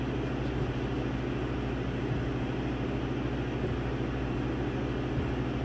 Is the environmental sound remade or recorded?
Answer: recorded